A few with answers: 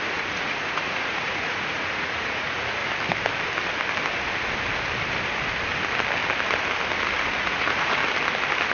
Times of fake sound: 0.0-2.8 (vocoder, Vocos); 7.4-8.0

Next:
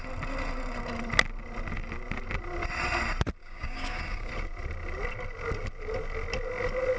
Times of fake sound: 3.4-4.3 (codec, DAC)

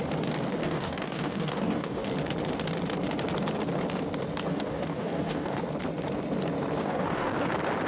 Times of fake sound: 0.6-2.1 (codec, DAC); 4.5-5.6; 6.8-7.5